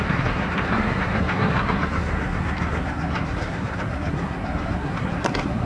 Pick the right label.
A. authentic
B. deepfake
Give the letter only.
B